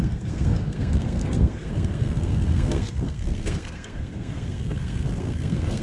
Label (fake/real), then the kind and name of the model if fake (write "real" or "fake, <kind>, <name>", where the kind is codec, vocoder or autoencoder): fake, codec, SNAC